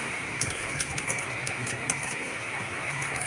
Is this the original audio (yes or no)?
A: no